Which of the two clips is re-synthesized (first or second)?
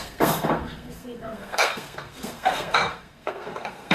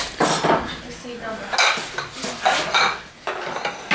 first